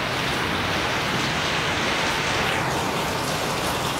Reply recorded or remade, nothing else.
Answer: recorded